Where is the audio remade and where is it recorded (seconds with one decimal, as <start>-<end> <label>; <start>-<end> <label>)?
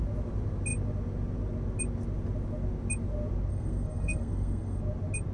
0.0-3.5 recorded; 3.5-4.8 remade; 4.8-5.3 recorded